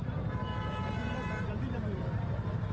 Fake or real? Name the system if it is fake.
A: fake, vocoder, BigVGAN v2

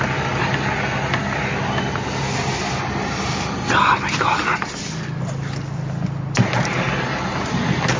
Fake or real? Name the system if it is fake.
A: real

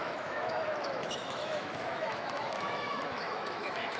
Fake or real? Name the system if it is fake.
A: fake, autoencoder, DAC-VAE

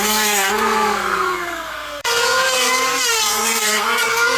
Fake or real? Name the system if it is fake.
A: fake, codec, SNAC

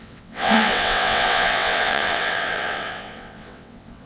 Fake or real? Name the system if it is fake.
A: fake, vocoder, WaveNeXt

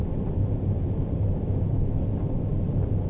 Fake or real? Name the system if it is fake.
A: real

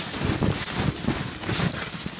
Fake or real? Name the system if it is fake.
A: real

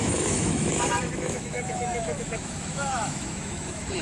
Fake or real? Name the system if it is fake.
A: fake, autoencoder, DAC-VAE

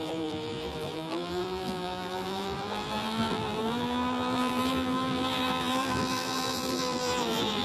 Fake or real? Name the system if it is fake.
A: fake, vocoder, BigVGAN v2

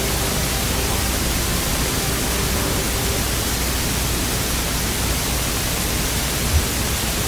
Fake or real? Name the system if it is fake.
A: real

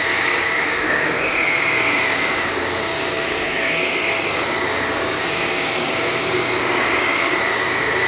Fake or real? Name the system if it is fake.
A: fake, codec, DAC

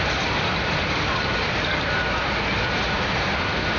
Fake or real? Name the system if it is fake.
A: fake, vocoder, BigVGAN v2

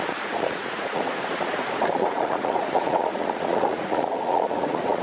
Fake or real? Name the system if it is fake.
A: fake, vocoder, Vocos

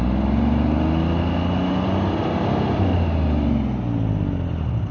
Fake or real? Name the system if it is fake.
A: real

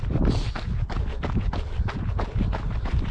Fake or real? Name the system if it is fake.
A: real